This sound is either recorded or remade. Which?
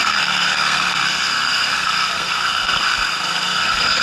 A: remade